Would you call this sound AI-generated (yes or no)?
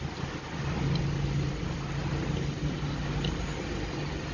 no